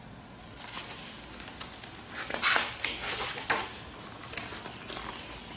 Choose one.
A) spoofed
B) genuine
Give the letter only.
B